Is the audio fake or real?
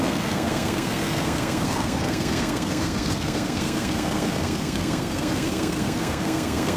fake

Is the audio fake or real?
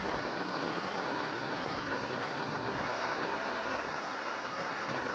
fake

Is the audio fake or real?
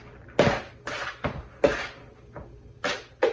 real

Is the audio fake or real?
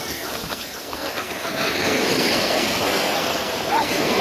fake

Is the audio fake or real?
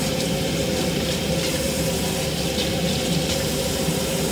real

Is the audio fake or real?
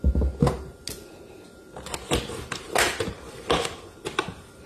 real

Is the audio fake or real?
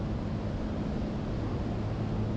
real